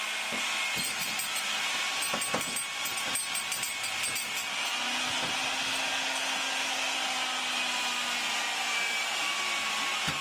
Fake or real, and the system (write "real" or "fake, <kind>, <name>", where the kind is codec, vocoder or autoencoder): real